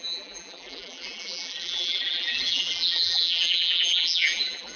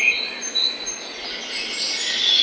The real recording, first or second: second